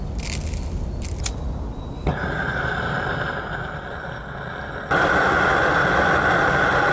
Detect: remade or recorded recorded